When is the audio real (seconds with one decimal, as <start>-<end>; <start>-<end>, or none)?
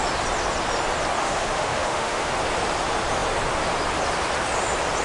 0.0-1.2; 2.3-5.0